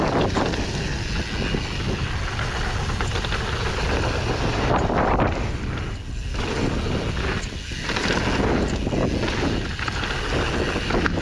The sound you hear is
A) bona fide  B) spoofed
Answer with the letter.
A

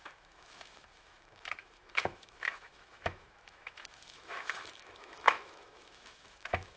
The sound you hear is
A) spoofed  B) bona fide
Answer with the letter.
A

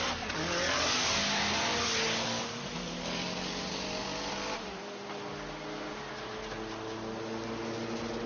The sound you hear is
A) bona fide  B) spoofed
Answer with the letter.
A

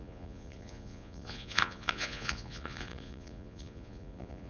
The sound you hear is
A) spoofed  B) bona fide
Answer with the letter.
A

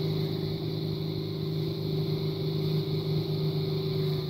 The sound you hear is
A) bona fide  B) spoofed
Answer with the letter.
A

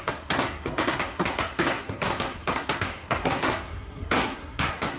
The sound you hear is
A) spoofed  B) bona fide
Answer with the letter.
A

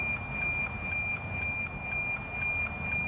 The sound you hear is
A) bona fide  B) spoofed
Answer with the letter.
A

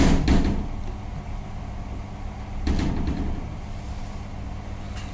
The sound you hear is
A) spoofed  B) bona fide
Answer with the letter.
B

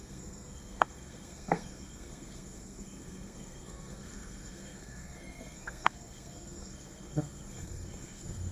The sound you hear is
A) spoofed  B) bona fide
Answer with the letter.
A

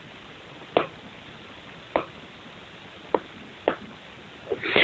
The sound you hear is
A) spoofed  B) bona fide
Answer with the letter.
B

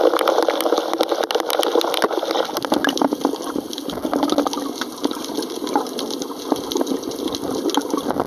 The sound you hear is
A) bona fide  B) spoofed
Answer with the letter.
A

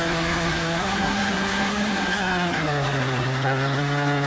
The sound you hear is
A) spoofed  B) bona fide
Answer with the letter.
A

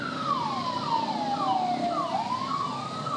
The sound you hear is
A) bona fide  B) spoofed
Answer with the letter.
A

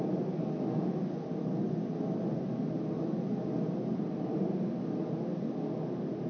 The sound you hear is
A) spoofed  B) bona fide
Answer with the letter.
B